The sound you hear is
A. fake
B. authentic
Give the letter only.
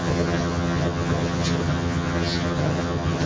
A